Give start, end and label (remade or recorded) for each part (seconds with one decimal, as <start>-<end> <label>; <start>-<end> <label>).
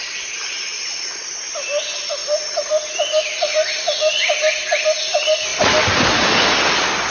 0.0-5.5 recorded; 5.5-6.5 remade; 6.5-7.1 recorded